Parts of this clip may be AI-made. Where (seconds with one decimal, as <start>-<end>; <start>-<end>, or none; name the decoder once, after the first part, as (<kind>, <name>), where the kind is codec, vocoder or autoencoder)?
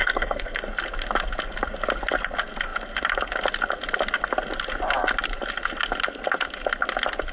0.0-0.6 (codec, SNAC)